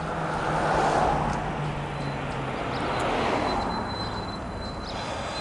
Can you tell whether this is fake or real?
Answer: real